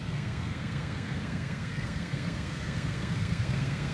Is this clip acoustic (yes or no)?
no